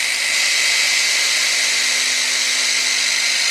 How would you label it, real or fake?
real